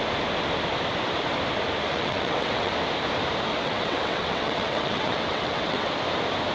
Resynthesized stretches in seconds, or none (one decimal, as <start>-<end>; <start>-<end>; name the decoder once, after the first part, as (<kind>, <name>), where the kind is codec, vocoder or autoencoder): 1.9-2.7 (vocoder, WaveNeXt); 3.5-5.9